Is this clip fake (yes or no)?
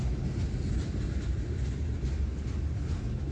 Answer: no